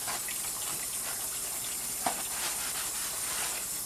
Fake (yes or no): no